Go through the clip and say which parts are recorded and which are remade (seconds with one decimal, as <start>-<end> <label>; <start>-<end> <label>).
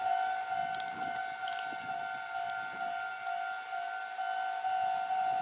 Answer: 0.0-5.4 recorded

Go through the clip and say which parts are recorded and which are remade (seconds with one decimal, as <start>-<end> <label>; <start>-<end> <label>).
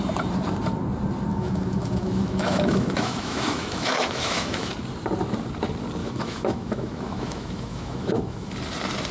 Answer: 0.0-1.3 recorded; 1.3-4.7 remade; 4.7-6.0 recorded; 6.0-8.5 remade; 8.5-9.1 recorded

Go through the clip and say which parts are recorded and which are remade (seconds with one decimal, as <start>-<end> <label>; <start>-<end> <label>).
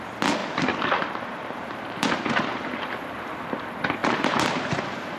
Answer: 0.0-0.4 recorded; 0.4-2.1 remade; 2.1-4.0 recorded; 4.0-5.2 remade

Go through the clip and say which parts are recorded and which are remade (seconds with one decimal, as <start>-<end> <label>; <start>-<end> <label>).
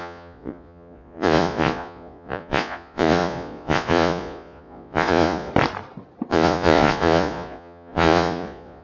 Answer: 0.0-5.5 remade; 5.5-6.3 recorded; 6.3-8.8 remade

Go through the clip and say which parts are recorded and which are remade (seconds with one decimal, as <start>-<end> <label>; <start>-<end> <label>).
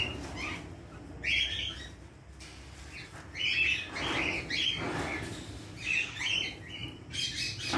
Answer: 0.0-7.8 recorded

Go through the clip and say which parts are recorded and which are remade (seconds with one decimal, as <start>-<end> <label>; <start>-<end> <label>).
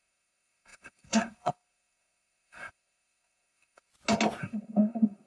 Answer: 0.0-3.9 remade; 3.9-4.4 recorded; 4.4-5.3 remade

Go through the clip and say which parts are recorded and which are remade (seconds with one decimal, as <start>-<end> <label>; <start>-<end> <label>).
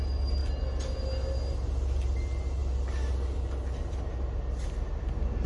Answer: 0.0-5.5 recorded